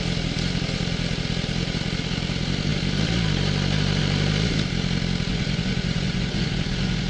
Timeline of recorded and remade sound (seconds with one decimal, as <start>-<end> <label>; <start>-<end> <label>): 0.0-5.3 recorded; 5.3-7.1 remade